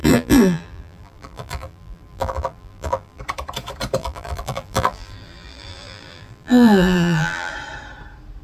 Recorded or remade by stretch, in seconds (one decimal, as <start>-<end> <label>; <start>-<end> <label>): 0.0-3.2 remade; 3.2-4.0 recorded; 4.0-7.5 remade; 7.5-8.4 recorded